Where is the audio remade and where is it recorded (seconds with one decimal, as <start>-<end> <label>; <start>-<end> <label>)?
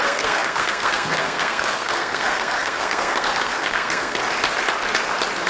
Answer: 0.0-4.2 remade; 4.2-5.5 recorded